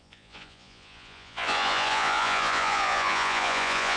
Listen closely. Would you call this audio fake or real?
fake